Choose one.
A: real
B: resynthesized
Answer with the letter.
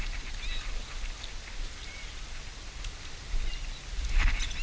A